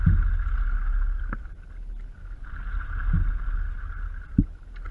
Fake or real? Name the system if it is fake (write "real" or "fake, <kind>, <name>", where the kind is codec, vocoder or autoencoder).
real